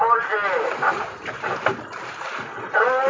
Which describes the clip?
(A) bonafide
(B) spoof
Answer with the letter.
A